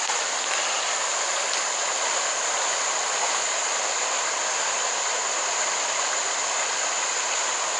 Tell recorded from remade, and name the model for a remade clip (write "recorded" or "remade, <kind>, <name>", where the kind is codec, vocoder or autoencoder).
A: recorded